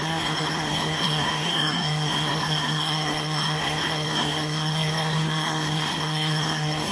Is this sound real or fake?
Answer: fake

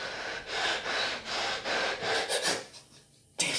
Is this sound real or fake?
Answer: real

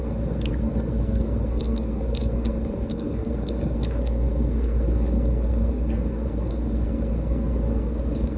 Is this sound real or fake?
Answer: fake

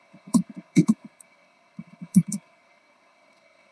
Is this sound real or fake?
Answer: fake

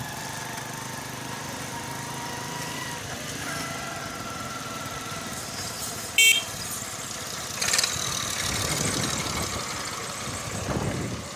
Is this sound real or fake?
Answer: real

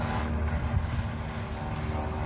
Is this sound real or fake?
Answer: real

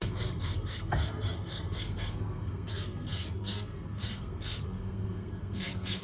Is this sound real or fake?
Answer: fake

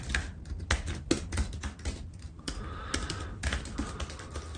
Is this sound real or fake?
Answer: real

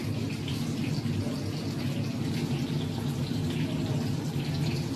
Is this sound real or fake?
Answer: real